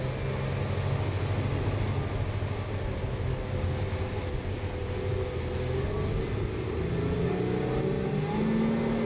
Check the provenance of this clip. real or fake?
real